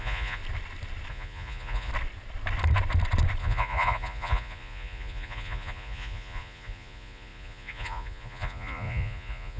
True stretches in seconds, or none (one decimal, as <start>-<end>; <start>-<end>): 0.4-1.1; 1.9-3.4